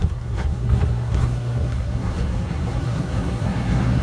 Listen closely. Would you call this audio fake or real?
fake